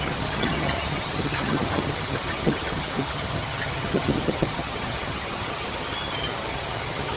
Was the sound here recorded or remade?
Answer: remade